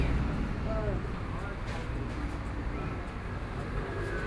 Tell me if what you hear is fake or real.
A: real